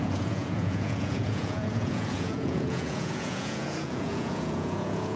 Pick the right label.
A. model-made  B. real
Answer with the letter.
A